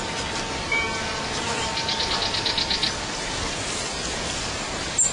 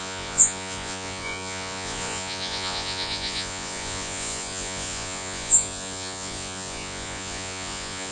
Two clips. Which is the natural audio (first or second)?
first